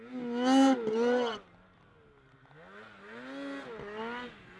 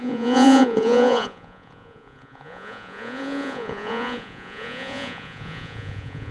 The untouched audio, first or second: first